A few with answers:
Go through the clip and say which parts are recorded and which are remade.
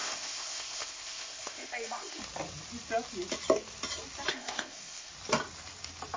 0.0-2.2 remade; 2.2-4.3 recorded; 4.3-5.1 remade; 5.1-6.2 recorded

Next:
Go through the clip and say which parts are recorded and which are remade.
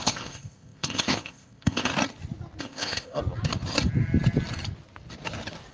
0.0-1.9 remade; 1.9-2.6 recorded; 2.6-3.2 remade; 3.2-5.7 recorded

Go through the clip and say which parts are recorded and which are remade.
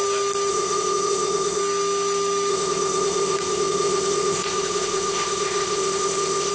0.0-0.5 recorded; 0.5-1.6 remade; 1.6-2.5 recorded; 2.5-6.5 remade